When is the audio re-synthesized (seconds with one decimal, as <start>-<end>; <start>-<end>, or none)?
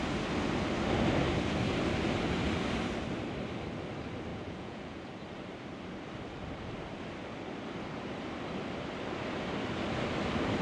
4.3-5.1